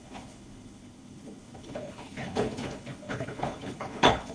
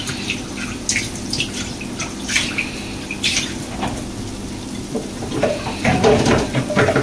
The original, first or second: second